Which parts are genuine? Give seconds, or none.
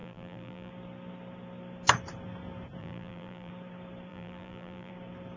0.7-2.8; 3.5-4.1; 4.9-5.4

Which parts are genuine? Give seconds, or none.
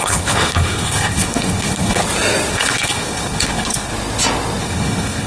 2.0-2.5; 3.9-4.6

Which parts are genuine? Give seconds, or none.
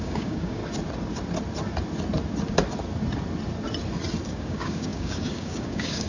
0.6-4.3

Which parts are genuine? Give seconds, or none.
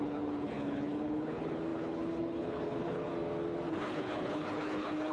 3.1-3.7